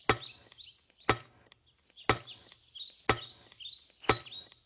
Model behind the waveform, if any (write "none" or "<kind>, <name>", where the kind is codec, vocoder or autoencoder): none